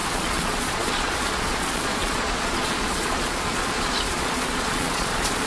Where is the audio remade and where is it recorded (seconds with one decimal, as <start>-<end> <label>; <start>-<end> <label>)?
0.0-5.5 remade